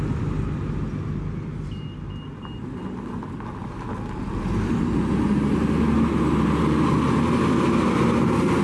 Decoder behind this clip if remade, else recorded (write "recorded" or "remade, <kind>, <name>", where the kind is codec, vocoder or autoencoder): recorded